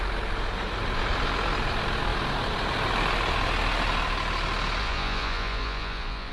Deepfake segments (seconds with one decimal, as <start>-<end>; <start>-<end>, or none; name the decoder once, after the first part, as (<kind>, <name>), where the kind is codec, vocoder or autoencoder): 4.8-6.3 (vocoder, Vocos)